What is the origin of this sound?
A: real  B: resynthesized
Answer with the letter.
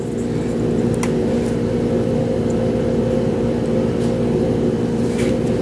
A